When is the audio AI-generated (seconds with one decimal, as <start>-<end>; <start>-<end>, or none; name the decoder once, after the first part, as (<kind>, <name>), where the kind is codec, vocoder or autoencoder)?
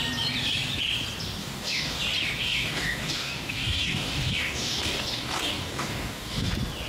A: 1.4-2.0 (codec, DAC); 2.4-6.5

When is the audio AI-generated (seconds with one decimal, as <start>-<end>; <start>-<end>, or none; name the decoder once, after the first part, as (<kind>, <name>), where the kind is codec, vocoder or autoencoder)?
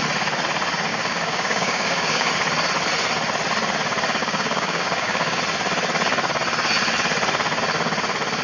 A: 0.9-2.3 (codec, DAC); 4.2-5.4